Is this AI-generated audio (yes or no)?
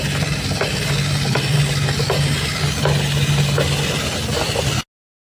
no